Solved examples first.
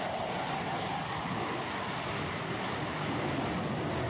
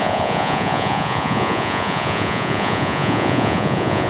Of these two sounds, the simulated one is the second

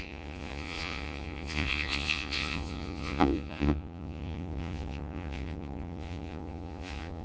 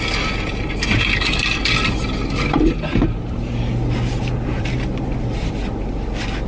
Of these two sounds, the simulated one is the first